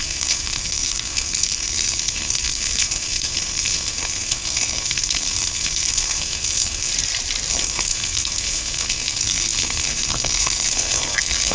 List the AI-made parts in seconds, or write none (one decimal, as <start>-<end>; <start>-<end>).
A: 0.0-6.9; 7.5-11.5